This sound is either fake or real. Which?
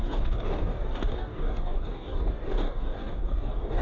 fake